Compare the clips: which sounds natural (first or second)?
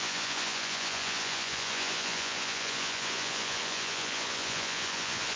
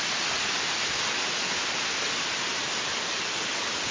second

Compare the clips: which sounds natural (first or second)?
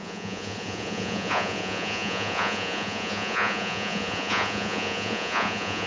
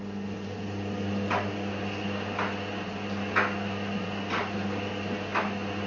second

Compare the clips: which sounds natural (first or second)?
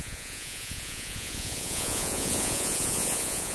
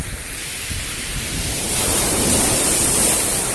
second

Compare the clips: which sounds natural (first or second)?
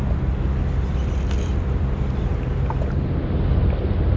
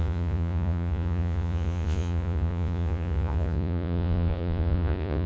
first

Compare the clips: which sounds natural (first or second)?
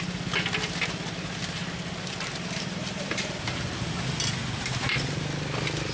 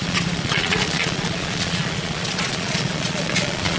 first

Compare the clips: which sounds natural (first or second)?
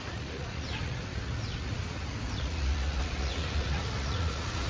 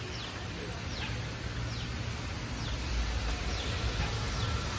second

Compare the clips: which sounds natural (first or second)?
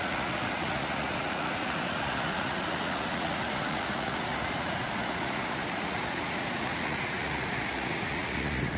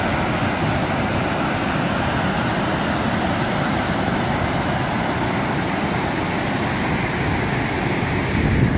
second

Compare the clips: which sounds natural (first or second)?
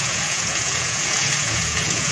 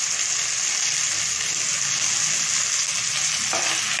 second